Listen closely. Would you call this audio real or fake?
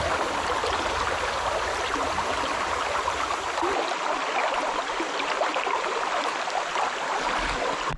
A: real